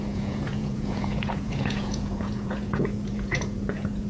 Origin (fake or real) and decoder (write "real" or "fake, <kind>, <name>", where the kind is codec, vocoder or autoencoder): fake, vocoder, Vocos